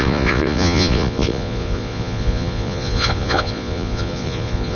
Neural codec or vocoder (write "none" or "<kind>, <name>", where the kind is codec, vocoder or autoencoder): vocoder, Vocos